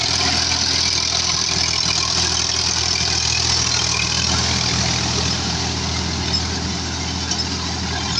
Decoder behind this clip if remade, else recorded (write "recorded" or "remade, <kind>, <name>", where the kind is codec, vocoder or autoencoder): recorded